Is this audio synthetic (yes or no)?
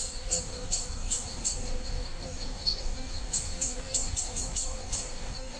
yes